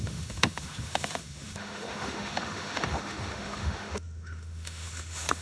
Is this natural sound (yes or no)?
no